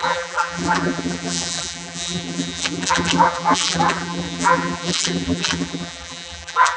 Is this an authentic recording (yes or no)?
no